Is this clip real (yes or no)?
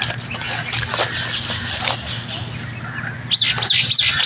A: yes